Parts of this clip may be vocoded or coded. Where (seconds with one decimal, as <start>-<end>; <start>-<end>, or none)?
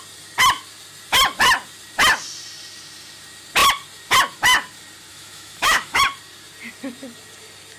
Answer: 5.1-6.0